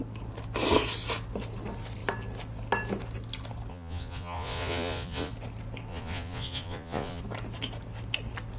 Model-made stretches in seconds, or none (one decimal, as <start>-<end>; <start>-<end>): 3.7-5.3; 5.9-7.2